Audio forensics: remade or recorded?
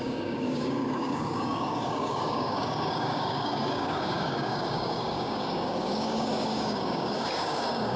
remade